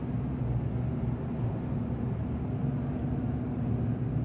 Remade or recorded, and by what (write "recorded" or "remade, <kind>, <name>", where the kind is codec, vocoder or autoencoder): recorded